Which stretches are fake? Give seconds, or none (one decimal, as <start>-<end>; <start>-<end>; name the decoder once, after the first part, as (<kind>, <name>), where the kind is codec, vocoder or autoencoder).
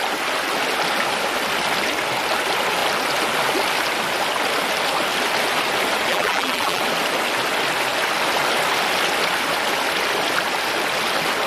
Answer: 6.1-6.8 (vocoder, BigVGAN v2)